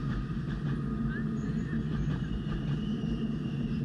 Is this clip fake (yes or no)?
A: no